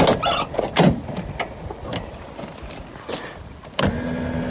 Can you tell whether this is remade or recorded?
recorded